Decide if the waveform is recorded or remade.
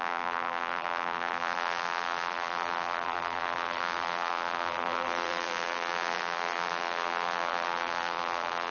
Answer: remade